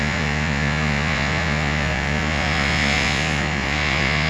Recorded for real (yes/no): no